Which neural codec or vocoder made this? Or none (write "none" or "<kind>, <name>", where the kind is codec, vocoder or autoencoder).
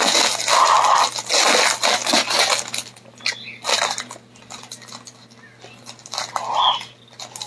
none